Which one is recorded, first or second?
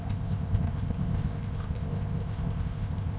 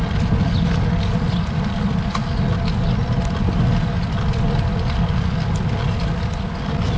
second